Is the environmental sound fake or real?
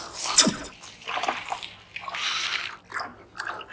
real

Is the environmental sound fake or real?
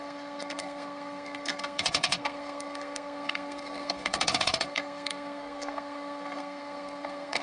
fake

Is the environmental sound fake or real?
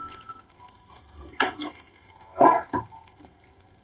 fake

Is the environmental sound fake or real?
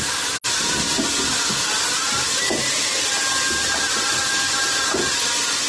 real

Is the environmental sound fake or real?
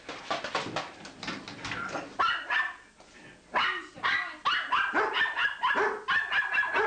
real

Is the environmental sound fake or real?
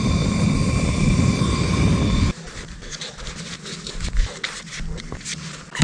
real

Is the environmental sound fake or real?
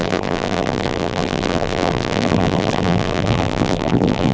fake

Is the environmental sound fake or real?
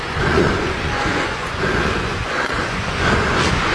fake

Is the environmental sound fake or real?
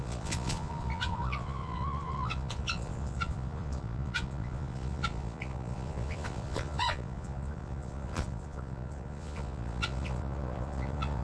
fake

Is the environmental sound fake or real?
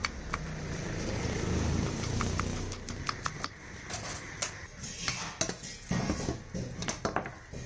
real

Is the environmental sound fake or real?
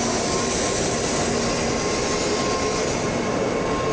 real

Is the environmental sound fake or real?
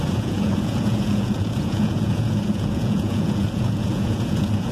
fake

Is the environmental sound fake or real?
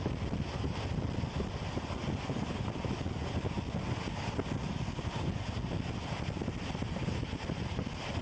real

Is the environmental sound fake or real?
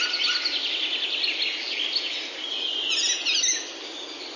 real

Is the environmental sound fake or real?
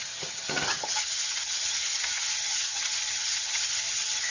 fake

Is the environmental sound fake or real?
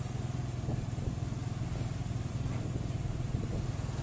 real